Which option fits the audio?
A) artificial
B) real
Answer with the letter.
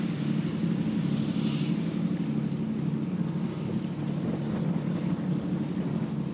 B